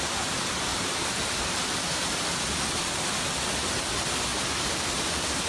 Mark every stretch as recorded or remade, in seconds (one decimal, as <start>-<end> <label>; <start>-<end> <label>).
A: 0.0-5.5 recorded